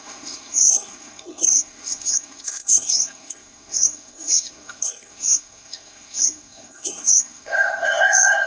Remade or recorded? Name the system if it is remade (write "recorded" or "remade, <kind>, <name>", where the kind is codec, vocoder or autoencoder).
remade, codec, SNAC